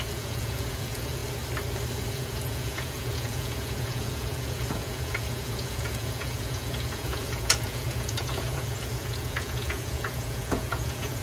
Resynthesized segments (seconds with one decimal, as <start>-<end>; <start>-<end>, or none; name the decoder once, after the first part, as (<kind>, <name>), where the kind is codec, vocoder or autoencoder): 0.0-1.2 (vocoder, Vocos); 2.1-11.2